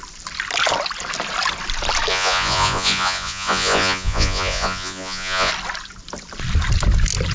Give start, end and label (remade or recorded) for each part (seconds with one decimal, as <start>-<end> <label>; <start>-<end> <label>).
0.0-2.1 recorded; 2.1-5.5 remade; 5.5-7.3 recorded

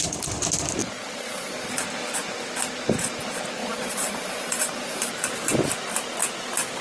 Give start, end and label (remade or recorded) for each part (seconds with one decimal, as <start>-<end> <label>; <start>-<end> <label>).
0.0-0.8 recorded; 0.8-1.7 remade; 1.7-3.6 recorded; 3.6-5.1 remade; 5.1-6.8 recorded

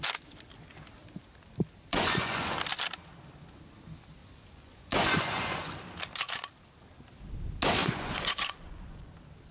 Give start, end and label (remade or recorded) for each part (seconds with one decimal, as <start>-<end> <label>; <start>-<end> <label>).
0.0-1.9 recorded; 1.9-2.5 remade; 2.5-4.2 recorded; 4.2-5.7 remade; 5.7-7.8 recorded; 7.8-9.1 remade; 9.1-9.5 recorded

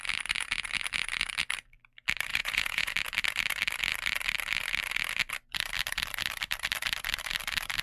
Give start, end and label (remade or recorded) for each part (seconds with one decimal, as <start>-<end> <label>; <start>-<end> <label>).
0.0-2.3 recorded; 2.3-2.9 remade; 2.9-7.8 recorded

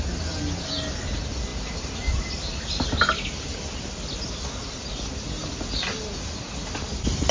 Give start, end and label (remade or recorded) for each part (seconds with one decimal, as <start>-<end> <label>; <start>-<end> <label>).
0.0-7.3 recorded

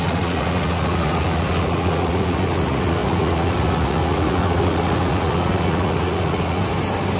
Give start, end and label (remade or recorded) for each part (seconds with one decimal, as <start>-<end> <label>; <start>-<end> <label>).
0.0-6.6 remade; 6.6-7.2 recorded